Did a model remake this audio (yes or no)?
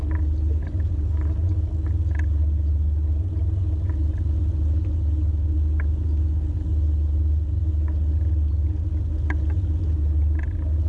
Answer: no